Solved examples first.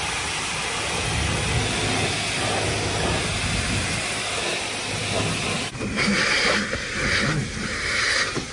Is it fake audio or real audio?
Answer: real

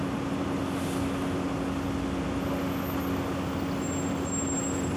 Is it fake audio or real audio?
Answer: real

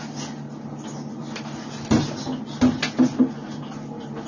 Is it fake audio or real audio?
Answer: real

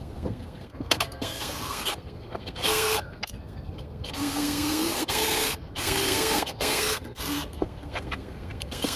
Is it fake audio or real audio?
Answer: fake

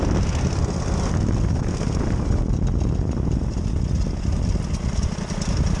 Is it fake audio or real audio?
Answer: real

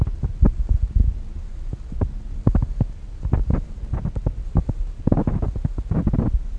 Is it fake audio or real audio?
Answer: real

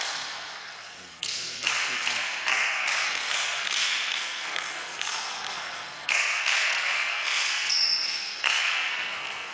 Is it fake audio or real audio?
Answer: fake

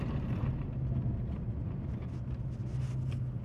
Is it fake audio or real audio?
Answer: real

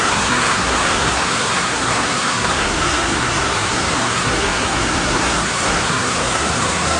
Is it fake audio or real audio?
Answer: fake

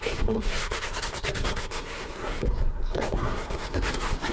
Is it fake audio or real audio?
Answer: fake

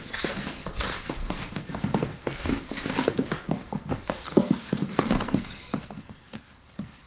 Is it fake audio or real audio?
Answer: fake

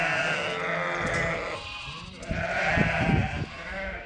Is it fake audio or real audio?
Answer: real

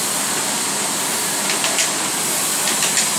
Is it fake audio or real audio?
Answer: real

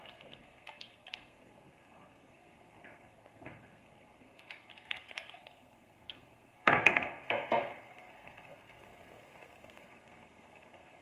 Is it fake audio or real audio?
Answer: fake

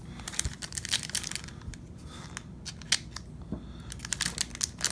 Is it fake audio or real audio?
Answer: real